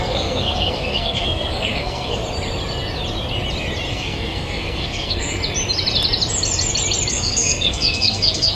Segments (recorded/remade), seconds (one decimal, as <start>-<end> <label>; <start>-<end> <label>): 0.0-2.2 remade; 2.2-3.9 recorded; 3.9-5.4 remade; 5.4-7.1 recorded; 7.1-8.5 remade